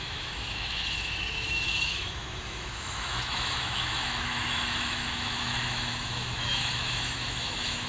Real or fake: fake